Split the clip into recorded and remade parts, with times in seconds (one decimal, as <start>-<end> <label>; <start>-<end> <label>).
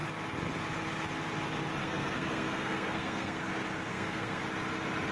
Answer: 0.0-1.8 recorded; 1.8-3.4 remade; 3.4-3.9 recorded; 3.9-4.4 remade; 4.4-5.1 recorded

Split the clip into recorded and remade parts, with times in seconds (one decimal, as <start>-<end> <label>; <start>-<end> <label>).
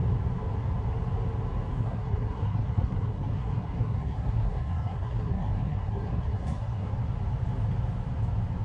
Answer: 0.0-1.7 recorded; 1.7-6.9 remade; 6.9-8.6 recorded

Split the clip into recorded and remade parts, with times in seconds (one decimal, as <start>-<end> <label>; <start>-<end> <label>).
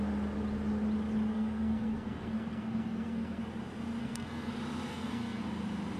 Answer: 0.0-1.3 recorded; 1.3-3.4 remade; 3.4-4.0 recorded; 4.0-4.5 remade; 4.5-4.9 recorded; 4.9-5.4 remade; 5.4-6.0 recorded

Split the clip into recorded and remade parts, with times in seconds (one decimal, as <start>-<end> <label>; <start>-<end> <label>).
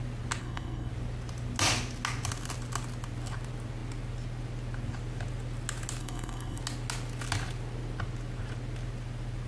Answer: 0.0-0.4 recorded; 0.4-0.9 remade; 0.9-6.0 recorded; 6.0-6.6 remade; 6.6-9.5 recorded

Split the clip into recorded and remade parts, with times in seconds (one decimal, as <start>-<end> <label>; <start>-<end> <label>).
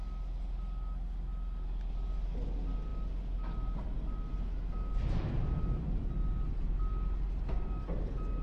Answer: 0.0-8.4 recorded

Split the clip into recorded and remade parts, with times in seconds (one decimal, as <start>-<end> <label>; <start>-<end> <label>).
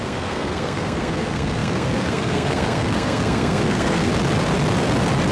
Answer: 0.0-4.1 remade; 4.1-5.3 recorded